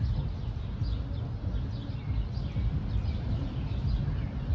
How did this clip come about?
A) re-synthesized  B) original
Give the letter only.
B